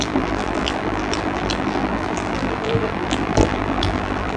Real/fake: fake